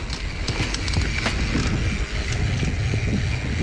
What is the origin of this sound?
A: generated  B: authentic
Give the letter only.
B